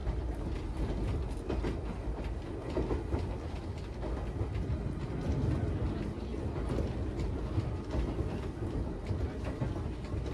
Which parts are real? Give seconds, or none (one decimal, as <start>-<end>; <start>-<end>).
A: 0.0-10.3